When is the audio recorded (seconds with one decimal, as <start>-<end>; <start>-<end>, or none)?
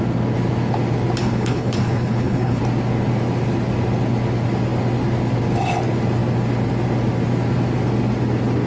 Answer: 0.0-1.2; 2.6-8.7